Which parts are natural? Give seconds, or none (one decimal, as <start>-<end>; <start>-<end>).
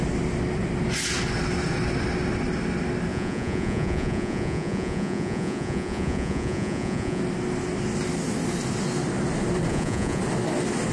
0.0-3.1; 7.2-9.7; 10.2-10.9